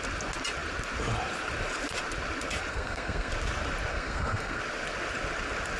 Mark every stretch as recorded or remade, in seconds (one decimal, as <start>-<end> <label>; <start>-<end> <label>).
0.0-2.7 recorded; 2.7-3.3 remade; 3.3-3.9 recorded; 3.9-4.6 remade; 4.6-5.8 recorded